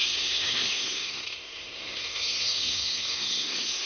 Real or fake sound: fake